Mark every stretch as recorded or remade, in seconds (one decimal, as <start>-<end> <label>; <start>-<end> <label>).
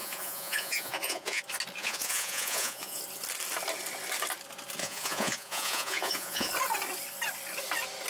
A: 0.0-1.4 remade; 1.4-1.8 recorded; 1.8-3.0 remade; 3.0-4.8 recorded; 4.8-6.5 remade; 6.5-8.1 recorded